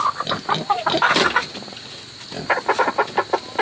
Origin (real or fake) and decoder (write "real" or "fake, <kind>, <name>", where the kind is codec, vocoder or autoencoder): real